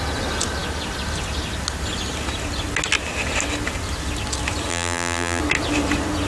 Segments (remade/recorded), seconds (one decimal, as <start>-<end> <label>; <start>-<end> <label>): 0.0-4.7 recorded; 4.7-5.4 remade; 5.4-6.3 recorded